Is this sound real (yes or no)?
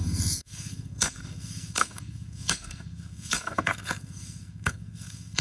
no